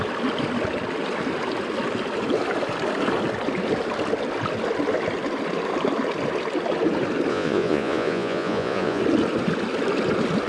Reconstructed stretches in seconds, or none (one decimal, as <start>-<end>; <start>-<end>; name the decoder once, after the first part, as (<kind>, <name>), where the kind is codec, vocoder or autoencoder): 7.3-9.0 (vocoder, Vocos)